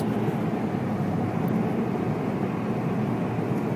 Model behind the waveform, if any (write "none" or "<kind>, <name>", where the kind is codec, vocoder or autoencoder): none